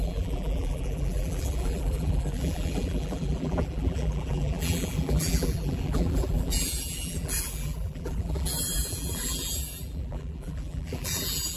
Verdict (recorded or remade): remade